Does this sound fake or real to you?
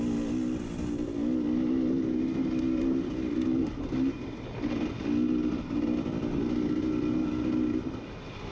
real